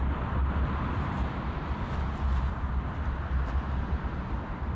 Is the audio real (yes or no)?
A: yes